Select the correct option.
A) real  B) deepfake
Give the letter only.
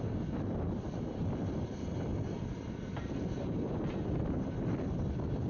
A